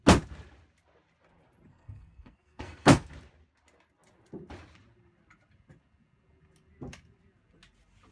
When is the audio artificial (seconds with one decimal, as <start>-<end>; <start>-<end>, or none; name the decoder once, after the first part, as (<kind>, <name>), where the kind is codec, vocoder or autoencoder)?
1.7-3.1 (codec, SNAC)